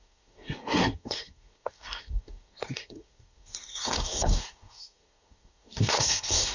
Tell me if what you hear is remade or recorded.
remade